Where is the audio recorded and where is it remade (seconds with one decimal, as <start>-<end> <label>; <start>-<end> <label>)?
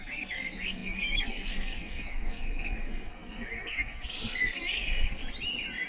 0.0-5.2 remade; 5.2-5.9 recorded